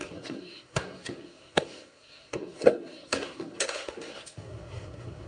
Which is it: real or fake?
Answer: fake